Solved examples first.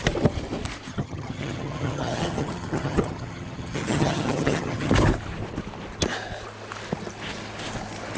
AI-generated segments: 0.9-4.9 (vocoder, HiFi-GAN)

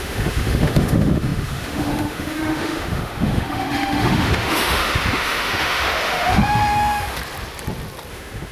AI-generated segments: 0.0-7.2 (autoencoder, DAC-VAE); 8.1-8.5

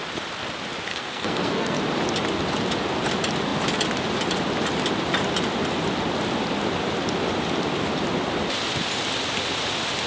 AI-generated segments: 0.9-1.8 (codec, SNAC)